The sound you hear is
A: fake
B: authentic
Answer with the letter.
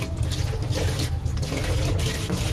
B